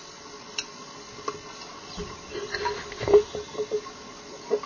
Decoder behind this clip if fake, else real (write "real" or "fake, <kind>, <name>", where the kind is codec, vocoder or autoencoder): real